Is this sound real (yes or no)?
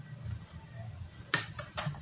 yes